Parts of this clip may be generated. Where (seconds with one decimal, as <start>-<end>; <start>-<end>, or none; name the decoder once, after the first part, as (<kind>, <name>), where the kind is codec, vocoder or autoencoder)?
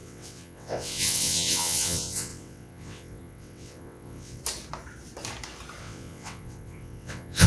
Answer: 0.0-4.4 (vocoder, WaveNeXt); 5.8-7.5